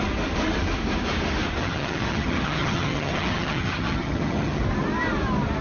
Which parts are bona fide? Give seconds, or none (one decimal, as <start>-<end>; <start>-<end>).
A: 0.0-1.6; 4.6-5.6